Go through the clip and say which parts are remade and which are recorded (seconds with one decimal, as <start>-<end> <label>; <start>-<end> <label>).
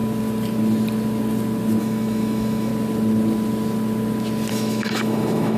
0.0-1.8 recorded; 1.8-2.7 remade; 2.7-4.5 recorded; 4.5-5.6 remade